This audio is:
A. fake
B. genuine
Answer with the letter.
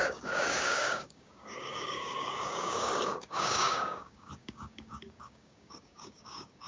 A